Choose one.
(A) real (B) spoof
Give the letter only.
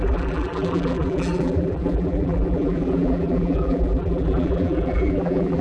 B